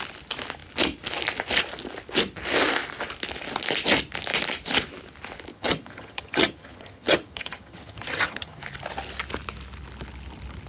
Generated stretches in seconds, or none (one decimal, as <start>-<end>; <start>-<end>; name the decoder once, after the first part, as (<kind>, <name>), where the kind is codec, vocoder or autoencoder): 5.5-8.6 (vocoder, HiFi-GAN)